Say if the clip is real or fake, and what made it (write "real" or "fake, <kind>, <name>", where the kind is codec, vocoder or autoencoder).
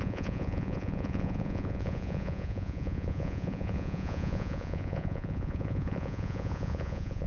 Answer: fake, vocoder, Vocos